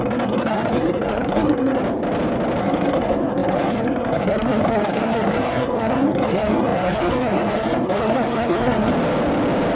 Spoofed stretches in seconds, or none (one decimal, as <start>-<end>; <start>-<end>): 0.0-1.8; 2.6-8.9